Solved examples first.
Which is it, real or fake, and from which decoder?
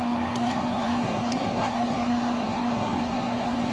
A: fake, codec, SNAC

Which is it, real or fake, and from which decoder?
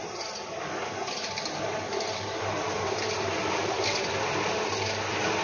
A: real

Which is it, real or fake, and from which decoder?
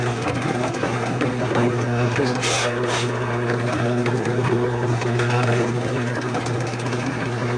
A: fake, codec, SNAC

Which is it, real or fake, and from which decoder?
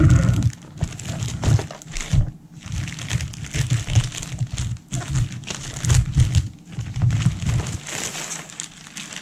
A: real